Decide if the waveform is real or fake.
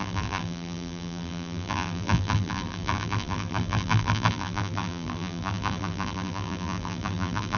fake